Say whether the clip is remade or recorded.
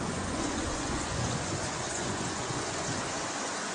remade